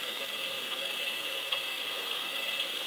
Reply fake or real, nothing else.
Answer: fake